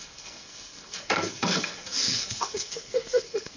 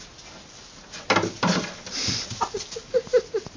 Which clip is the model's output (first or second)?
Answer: first